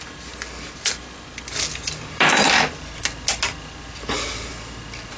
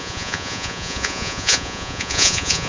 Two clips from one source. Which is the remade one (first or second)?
second